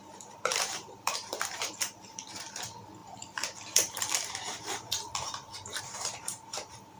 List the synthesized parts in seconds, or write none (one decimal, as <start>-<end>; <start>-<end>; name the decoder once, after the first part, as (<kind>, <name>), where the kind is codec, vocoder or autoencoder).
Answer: 0.0-7.0 (vocoder, BigVGAN v2)